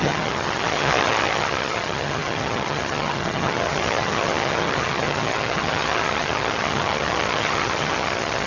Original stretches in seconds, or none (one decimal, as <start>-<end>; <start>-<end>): none